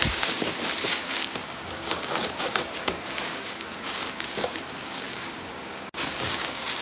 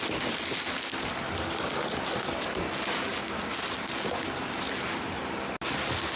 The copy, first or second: first